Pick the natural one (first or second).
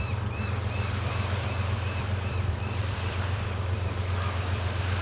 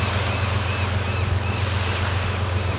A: second